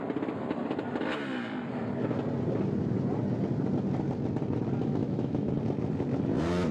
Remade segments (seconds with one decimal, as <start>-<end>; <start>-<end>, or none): 5.0-5.5